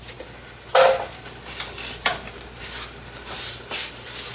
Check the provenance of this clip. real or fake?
real